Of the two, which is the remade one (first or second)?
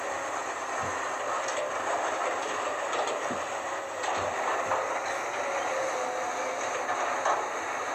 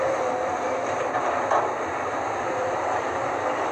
second